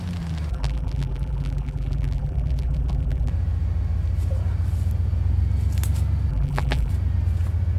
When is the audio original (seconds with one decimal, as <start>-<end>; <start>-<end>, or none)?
0.0-0.5; 3.3-6.3; 6.9-7.8